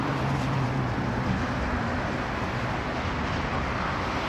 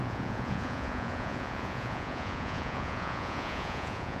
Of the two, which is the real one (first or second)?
first